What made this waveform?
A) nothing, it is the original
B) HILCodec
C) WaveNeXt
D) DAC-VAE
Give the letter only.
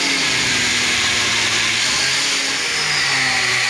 A